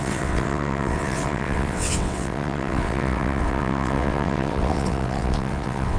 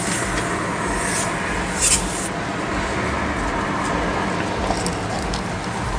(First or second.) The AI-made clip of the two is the first